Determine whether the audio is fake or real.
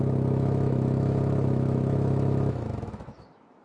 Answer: fake